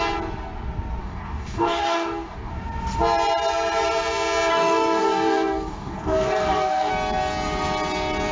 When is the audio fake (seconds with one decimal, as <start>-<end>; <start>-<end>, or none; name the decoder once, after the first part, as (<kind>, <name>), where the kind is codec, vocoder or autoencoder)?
1.0-2.5 (codec, DAC); 4.5-6.9